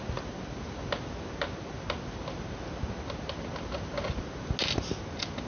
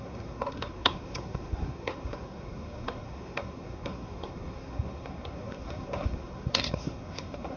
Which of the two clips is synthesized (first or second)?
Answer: second